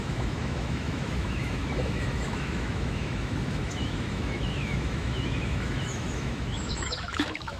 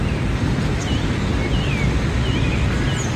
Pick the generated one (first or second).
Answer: first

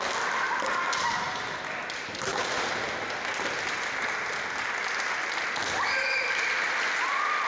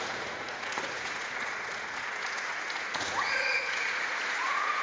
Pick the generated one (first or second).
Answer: second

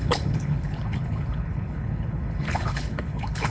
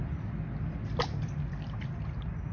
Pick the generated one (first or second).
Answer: first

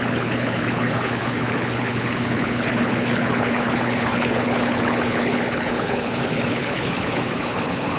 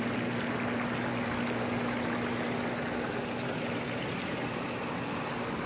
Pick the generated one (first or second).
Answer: first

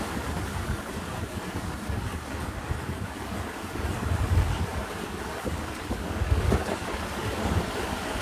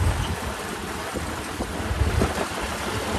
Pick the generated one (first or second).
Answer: first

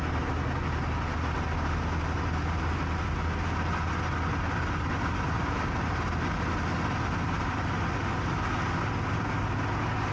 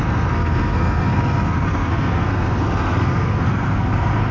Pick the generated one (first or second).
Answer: second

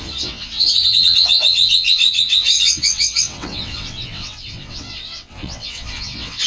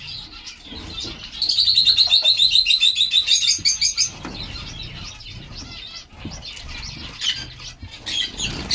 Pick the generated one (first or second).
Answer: first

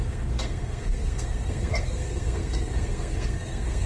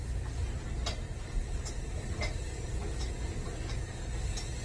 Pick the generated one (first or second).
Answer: first